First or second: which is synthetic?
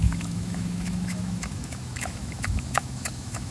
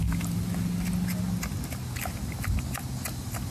first